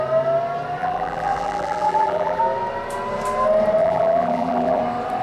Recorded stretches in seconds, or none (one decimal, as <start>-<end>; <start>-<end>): 0.0-0.8; 2.4-3.8; 4.8-5.2